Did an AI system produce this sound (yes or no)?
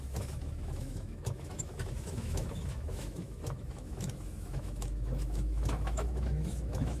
yes